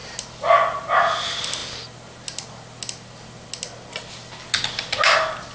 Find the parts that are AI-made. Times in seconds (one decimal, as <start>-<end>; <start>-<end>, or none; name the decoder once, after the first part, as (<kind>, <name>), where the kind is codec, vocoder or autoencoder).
none